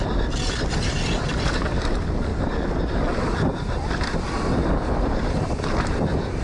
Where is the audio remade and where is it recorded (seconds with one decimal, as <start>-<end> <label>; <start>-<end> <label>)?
0.0-2.3 remade; 2.3-3.9 recorded; 3.9-6.4 remade